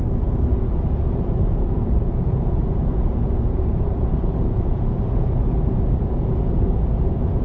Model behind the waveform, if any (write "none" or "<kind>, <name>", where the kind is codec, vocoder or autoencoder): vocoder, Vocos